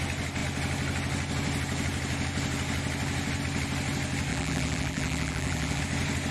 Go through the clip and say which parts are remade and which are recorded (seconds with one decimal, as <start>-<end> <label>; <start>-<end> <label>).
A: 0.0-4.3 recorded; 4.3-5.8 remade; 5.8-6.3 recorded